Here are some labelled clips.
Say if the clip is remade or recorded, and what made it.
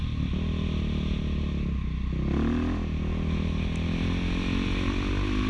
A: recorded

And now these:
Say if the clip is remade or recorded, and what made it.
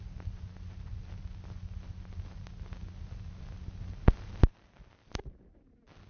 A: recorded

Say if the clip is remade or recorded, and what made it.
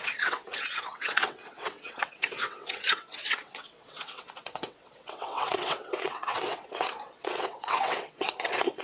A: remade, vocoder, WaveNeXt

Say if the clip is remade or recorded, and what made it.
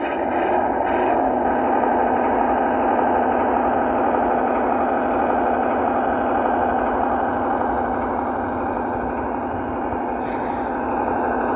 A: recorded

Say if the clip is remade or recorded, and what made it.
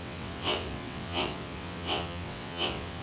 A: remade, vocoder, WaveNeXt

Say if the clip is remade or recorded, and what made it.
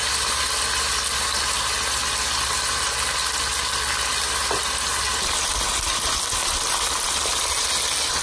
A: recorded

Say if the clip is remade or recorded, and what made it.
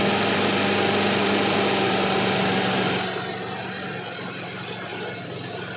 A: recorded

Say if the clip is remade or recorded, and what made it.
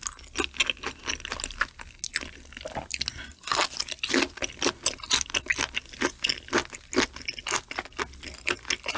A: recorded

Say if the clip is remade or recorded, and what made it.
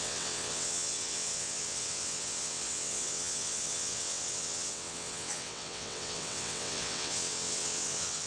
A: remade, vocoder, WaveNeXt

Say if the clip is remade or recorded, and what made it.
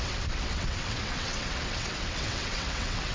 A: remade, vocoder, WaveNeXt